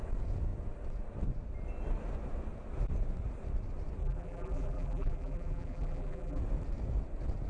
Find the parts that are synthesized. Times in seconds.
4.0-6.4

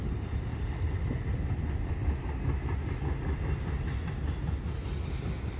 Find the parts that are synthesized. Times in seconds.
0.5-1.3

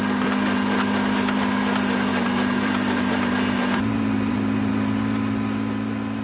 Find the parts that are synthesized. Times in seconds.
2.1-4.7

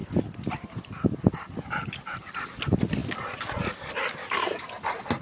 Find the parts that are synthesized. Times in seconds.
none

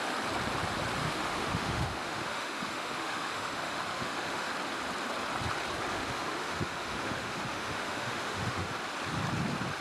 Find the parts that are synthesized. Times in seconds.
1.0-4.5; 5.9-8.7

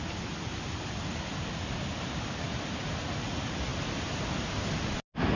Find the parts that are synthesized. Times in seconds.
none

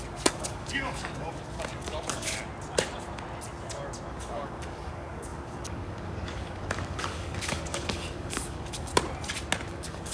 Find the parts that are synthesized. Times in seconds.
0.0-2.4; 4.1-8.9; 9.7-10.1

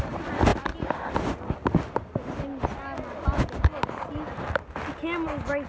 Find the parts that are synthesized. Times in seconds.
none